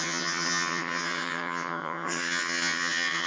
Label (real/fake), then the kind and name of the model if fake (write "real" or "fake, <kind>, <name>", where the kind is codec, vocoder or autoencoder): fake, vocoder, HiFi-GAN